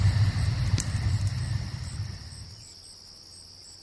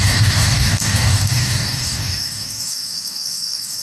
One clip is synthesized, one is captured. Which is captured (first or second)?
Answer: first